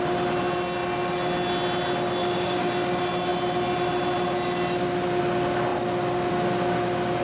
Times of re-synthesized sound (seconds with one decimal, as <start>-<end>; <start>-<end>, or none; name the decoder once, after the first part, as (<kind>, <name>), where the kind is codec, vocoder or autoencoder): 2.2-2.7 (codec, DAC)